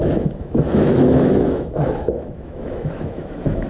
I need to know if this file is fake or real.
fake